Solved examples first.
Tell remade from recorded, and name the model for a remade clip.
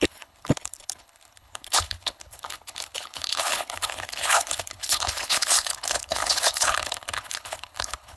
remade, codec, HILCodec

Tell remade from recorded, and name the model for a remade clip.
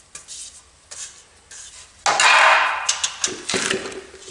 recorded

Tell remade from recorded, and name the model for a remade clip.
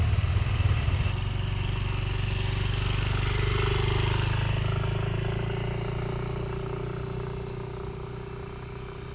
recorded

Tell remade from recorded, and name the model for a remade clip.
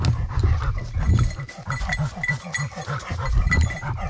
recorded